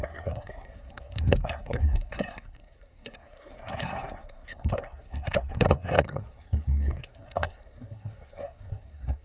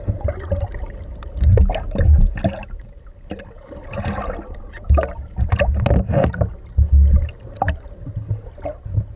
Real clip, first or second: second